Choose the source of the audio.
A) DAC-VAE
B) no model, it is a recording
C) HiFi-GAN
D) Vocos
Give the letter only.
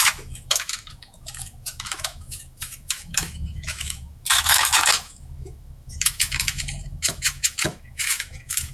A